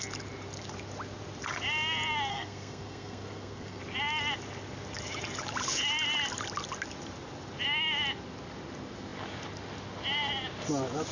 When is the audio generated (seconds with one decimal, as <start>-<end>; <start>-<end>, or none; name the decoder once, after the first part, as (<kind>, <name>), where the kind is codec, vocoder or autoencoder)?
2.3-3.8 (codec, SNAC)